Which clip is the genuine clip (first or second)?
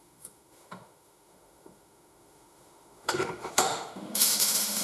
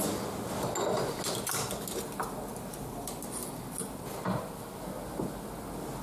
second